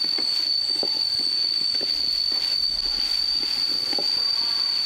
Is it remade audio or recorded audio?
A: recorded